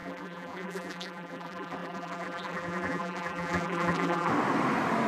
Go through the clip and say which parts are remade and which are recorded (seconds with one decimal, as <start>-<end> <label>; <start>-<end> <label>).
0.0-4.3 remade; 4.3-5.1 recorded